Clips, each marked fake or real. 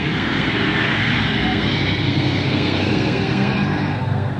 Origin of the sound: fake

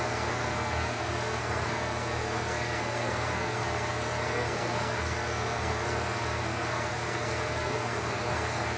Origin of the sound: fake